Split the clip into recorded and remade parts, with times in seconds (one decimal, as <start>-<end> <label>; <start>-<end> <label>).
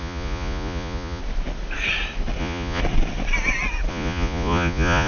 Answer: 0.0-1.2 remade; 1.2-2.4 recorded; 2.4-2.8 remade; 2.8-3.9 recorded; 3.9-5.1 remade